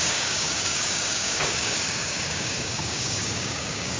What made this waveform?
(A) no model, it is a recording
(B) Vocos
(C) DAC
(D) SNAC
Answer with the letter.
C